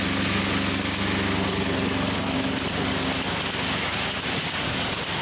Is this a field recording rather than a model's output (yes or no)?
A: yes